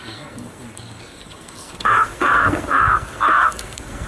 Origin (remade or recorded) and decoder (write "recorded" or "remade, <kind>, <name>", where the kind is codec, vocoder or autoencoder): remade, codec, SNAC